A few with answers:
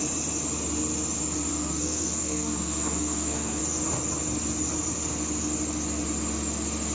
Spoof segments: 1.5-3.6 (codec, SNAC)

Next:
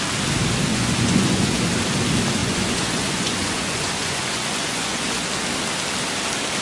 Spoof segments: 0.7-1.7 (vocoder, Vocos); 2.4-5.3

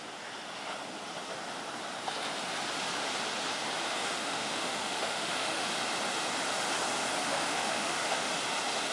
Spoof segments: 4.0-5.7 (autoencoder, DAC-VAE); 7.2-8.3

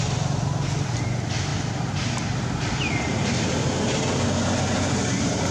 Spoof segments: none

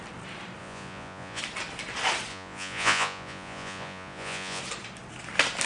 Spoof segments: 0.6-1.4 (vocoder, Vocos); 2.3-4.6